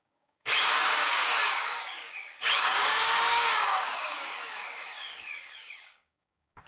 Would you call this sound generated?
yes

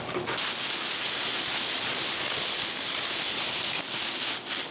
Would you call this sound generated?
no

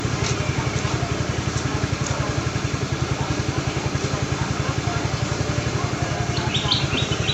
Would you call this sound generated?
no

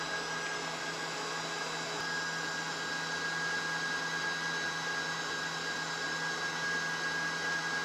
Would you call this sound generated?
no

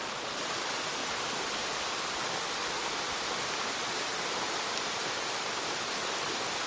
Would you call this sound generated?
no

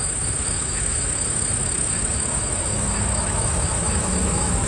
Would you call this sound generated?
yes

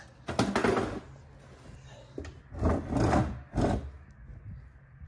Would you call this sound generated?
no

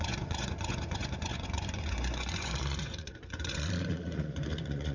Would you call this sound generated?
yes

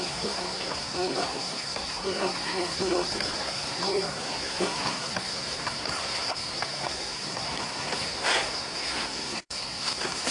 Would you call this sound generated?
yes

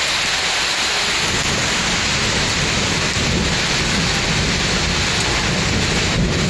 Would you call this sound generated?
no